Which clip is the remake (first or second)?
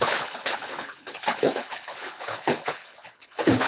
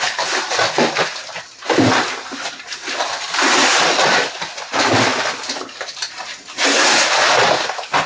first